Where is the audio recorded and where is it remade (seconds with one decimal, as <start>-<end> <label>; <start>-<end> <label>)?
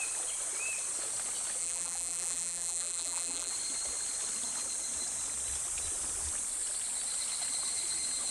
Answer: 0.0-1.6 recorded; 1.6-3.5 remade; 3.5-8.3 recorded